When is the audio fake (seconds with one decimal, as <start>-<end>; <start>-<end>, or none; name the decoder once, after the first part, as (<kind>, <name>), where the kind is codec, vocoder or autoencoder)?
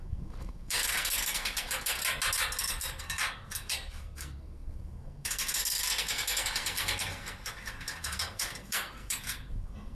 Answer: 0.0-2.0 (codec, SNAC); 2.6-9.9